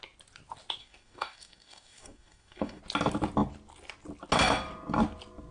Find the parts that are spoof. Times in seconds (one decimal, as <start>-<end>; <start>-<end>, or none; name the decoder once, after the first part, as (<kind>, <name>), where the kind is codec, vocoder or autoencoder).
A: 0.8-2.8 (codec, DAC)